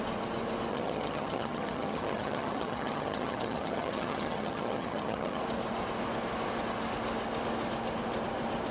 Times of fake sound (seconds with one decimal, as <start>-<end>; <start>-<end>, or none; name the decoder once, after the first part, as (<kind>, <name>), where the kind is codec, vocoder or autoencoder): 0.7-5.4 (vocoder, HiFi-GAN)